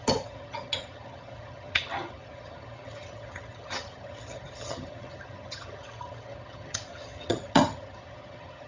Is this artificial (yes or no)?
yes